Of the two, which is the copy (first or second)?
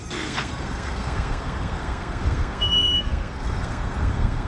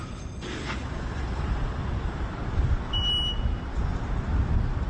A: first